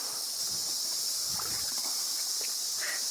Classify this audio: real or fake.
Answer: real